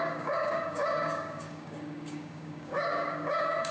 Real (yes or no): no